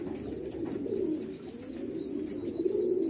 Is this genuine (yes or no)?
yes